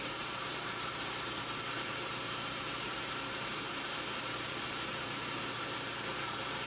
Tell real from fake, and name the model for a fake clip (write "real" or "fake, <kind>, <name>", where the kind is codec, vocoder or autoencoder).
fake, vocoder, BigVGAN v2